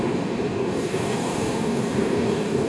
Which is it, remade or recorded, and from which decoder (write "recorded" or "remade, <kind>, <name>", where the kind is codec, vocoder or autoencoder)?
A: remade, codec, DAC